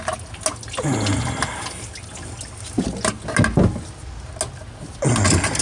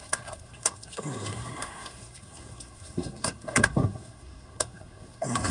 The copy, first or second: second